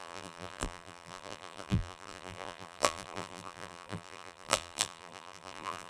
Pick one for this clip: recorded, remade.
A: remade